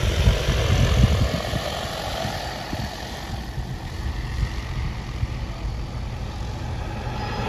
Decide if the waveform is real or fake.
real